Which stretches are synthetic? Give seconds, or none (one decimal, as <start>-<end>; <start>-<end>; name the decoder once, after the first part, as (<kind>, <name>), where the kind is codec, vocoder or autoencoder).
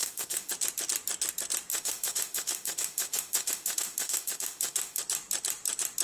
0.0-0.5 (autoencoder, DAC-VAE); 1.7-5.0